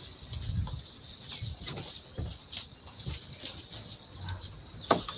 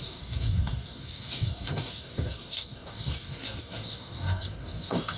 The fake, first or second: second